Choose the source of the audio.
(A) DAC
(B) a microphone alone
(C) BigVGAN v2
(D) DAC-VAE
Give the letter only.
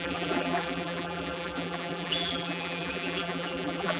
C